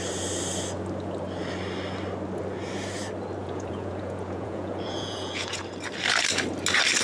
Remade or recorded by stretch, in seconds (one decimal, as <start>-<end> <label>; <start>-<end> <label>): 0.0-3.4 recorded; 3.4-5.6 remade; 5.6-7.0 recorded